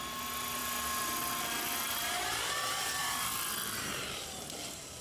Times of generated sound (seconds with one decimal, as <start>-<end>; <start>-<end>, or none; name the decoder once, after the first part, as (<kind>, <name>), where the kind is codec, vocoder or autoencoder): 0.6-2.5 (vocoder, BigVGAN v2); 3.0-5.0

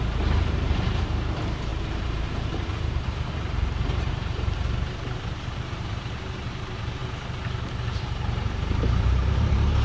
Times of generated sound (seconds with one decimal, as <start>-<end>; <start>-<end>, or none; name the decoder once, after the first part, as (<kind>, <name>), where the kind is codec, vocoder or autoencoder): 0.0-9.8 (vocoder, BigVGAN v2)